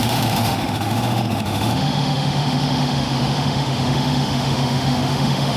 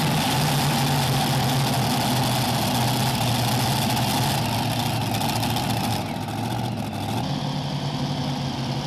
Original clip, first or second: second